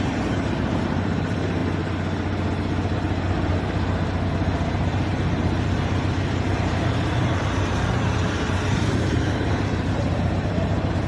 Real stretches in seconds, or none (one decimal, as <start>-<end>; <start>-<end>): 1.6-6.3